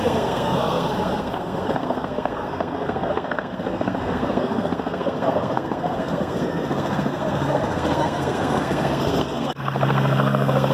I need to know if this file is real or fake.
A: fake